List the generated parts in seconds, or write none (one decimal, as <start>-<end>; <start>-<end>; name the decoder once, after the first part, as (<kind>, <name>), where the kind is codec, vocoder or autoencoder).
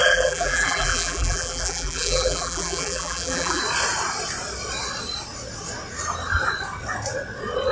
0.0-3.6 (vocoder, BigVGAN v2)